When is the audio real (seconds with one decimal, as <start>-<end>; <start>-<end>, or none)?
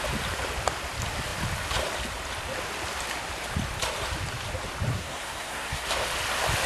0.0-4.9; 5.9-6.7